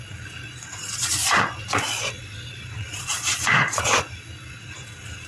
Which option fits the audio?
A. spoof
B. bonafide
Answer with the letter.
A